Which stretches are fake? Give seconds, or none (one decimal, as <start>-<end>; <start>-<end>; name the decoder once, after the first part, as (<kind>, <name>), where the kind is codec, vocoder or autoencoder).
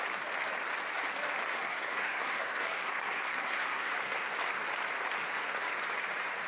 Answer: 1.5-4.3 (codec, SNAC); 5.2-5.7